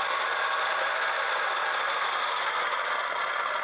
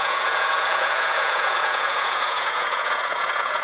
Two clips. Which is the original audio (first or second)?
first